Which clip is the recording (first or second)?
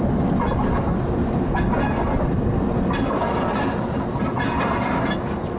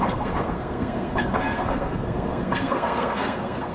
first